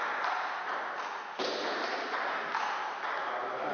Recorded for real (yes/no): yes